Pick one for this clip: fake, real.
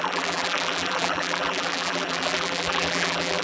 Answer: fake